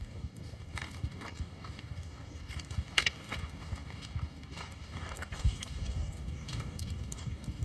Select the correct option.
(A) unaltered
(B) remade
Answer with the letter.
B